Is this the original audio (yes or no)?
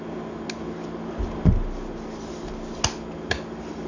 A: yes